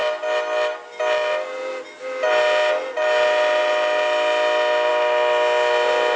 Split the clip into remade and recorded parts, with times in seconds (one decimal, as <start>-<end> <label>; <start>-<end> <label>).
0.0-6.2 recorded